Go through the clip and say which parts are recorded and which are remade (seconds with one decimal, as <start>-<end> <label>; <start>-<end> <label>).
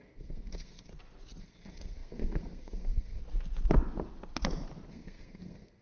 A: 0.0-0.9 remade; 0.9-1.4 recorded; 1.4-3.2 remade; 3.2-4.9 recorded; 4.9-5.8 remade